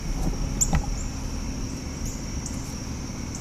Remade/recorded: recorded